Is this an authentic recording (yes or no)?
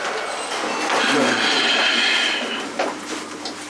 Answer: yes